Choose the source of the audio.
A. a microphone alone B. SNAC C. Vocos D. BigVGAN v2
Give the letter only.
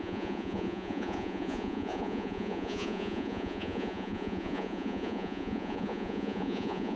C